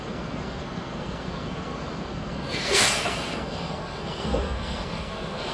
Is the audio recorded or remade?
remade